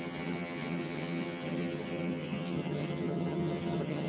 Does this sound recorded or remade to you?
remade